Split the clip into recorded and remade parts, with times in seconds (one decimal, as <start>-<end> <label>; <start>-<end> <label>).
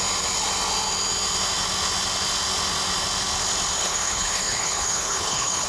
0.0-3.8 recorded; 3.8-5.7 remade